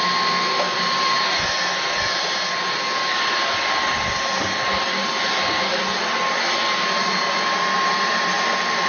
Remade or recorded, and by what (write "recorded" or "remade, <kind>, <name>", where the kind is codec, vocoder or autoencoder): recorded